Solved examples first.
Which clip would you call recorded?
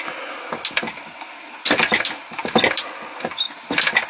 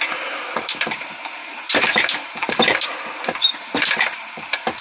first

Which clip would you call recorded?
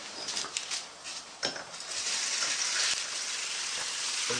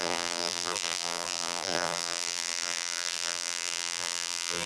first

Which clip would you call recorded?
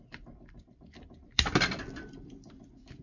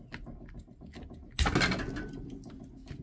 second